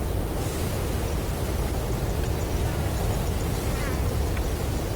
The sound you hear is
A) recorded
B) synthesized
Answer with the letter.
A